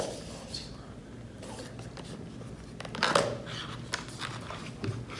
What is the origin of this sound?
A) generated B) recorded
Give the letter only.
B